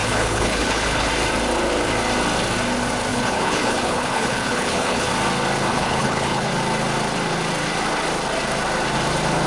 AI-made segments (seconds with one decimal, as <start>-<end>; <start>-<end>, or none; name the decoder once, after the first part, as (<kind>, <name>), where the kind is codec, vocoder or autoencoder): 0.0-1.1 (codec, HILCodec); 3.1-5.1; 5.7-6.5